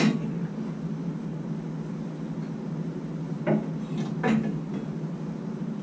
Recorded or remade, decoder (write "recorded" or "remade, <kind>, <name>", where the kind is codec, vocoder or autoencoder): recorded